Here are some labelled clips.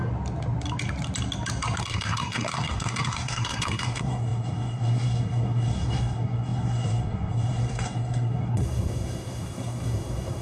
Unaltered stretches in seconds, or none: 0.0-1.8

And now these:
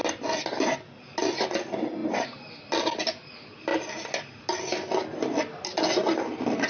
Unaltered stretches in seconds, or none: 0.0-6.7

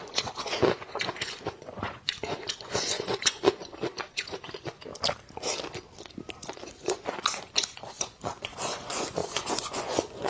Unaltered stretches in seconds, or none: 4.9-6.5

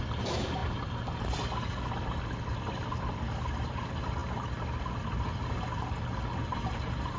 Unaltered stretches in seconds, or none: 0.0-7.2